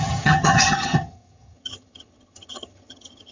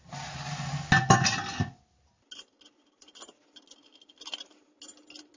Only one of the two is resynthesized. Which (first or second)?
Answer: first